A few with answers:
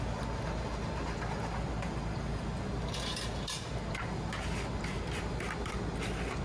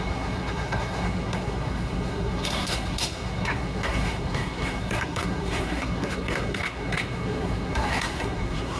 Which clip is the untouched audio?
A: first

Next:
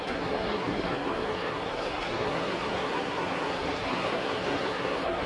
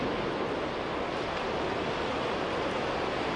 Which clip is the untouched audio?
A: second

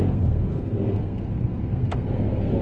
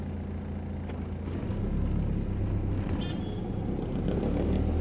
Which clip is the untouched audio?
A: second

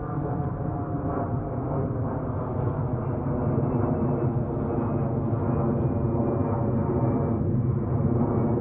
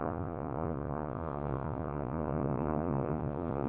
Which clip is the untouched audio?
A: first